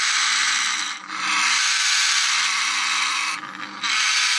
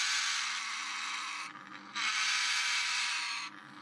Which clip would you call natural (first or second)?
second